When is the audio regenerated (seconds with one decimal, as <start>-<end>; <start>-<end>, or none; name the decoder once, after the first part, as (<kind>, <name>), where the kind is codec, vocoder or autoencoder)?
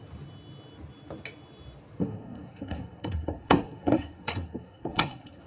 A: 2.0-5.5 (codec, SNAC)